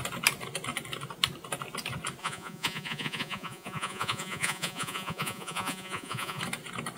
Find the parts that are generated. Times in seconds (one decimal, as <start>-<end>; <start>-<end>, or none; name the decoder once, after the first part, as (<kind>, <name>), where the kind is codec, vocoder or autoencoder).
2.2-6.4 (vocoder, Vocos)